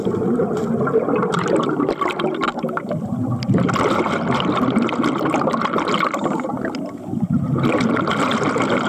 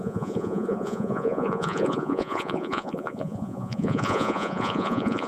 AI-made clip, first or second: second